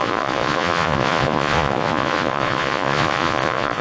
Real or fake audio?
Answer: fake